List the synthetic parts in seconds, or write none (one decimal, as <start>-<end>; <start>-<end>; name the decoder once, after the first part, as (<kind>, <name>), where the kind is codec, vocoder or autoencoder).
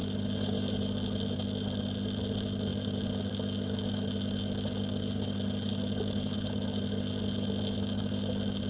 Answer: none